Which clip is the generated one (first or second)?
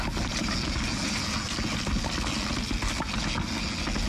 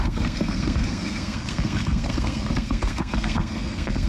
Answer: second